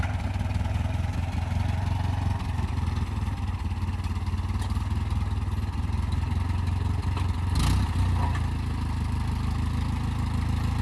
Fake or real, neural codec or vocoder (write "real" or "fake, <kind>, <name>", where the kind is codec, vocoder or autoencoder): real